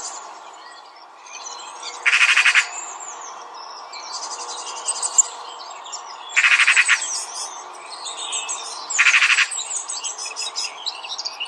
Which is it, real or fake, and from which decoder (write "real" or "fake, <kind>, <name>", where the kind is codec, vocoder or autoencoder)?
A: real